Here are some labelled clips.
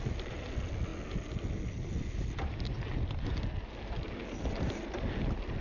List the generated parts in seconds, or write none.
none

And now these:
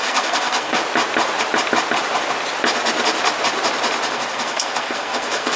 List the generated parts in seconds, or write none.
0.0-0.8; 4.1-5.6

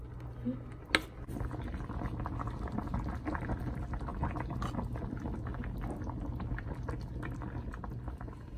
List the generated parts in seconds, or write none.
none

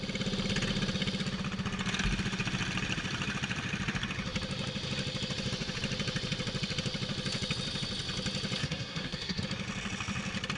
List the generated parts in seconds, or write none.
8.6-9.4